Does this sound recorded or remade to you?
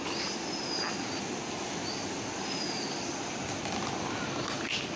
recorded